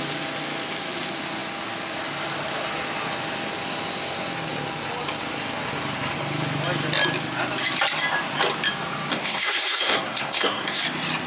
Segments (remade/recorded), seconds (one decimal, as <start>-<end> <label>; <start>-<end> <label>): 0.0-9.1 recorded; 9.1-10.8 remade; 10.8-11.3 recorded